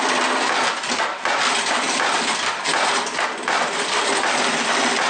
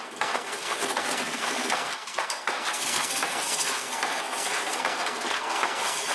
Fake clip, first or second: second